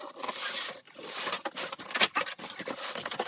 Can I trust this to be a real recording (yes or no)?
yes